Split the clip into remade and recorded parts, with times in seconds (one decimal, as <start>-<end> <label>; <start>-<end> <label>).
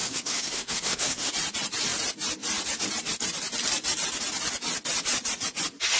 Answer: 0.0-1.3 remade; 1.3-6.0 recorded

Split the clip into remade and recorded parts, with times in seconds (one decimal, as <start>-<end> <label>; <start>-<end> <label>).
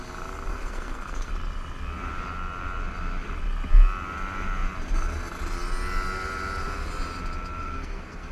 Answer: 0.0-0.5 recorded; 0.5-1.3 remade; 1.3-7.6 recorded; 7.6-8.3 remade